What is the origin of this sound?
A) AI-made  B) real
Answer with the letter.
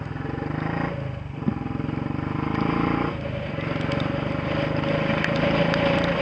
B